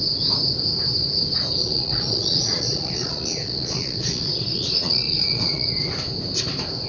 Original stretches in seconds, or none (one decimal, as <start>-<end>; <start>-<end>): 0.0-1.6; 5.7-6.9